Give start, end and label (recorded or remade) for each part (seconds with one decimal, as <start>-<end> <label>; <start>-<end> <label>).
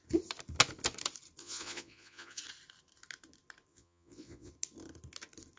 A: 0.0-1.4 recorded; 1.4-2.4 remade; 2.4-3.7 recorded; 3.7-4.5 remade; 4.5-5.6 recorded